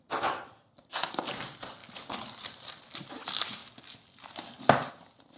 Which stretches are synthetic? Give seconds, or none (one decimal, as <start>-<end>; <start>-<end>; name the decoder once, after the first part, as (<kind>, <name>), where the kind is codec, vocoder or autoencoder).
0.0-3.6 (vocoder, BigVGAN v2); 4.9-5.4